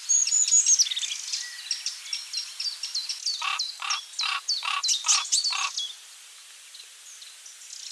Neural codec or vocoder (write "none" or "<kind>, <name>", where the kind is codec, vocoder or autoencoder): none